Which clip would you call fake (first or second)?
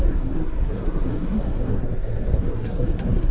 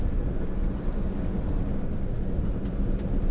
first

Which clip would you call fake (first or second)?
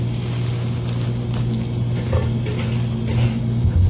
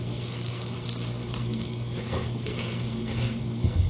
second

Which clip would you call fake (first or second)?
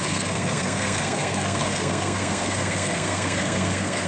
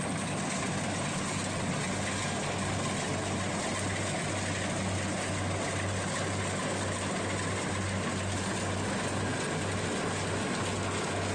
first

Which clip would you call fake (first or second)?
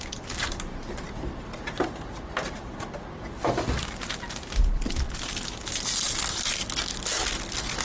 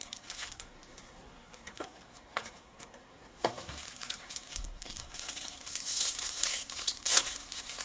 second